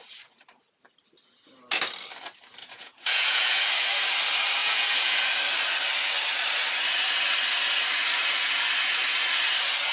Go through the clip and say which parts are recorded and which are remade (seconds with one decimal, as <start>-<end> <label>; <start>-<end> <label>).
0.0-2.6 recorded; 2.6-3.6 remade; 3.6-4.6 recorded; 4.6-5.3 remade; 5.3-9.9 recorded